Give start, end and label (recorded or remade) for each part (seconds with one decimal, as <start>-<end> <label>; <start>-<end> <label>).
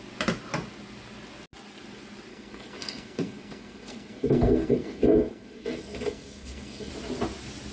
0.0-2.3 recorded; 2.3-6.9 remade; 6.9-7.7 recorded